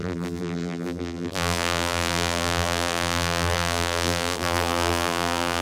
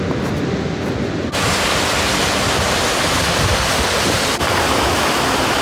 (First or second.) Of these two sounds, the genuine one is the second